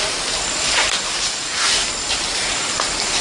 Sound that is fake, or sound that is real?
real